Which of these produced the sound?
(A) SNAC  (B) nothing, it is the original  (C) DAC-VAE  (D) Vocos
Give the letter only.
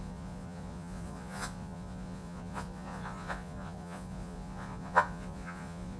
D